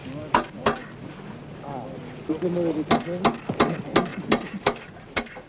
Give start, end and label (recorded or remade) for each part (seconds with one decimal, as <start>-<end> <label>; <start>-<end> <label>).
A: 0.0-4.1 recorded; 4.1-4.9 remade; 4.9-5.5 recorded